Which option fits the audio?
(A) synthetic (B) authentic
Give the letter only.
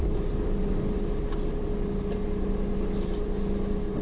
B